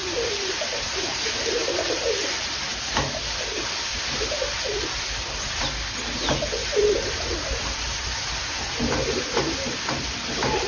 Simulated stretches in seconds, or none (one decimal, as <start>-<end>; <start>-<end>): 0.0-3.2; 3.9-4.6; 6.6-9.8